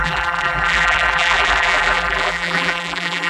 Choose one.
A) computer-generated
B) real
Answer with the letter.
A